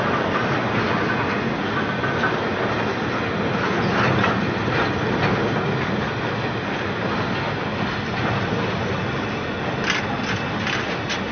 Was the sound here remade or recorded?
recorded